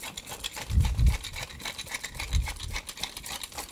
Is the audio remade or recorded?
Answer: remade